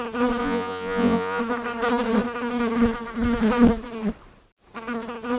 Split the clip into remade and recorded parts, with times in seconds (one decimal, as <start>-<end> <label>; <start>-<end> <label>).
0.0-0.4 recorded; 0.4-1.4 remade; 1.4-5.4 recorded